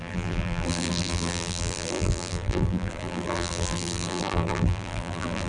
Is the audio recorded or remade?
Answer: remade